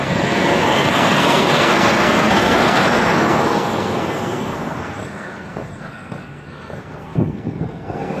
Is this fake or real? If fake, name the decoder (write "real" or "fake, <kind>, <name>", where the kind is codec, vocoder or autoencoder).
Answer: fake, codec, SNAC